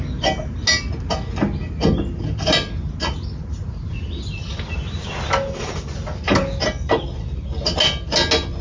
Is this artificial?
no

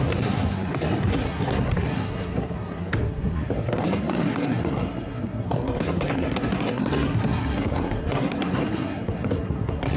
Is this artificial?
yes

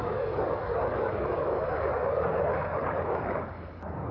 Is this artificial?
yes